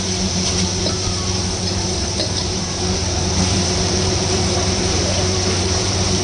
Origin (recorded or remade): remade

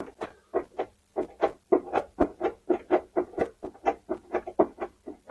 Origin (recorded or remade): recorded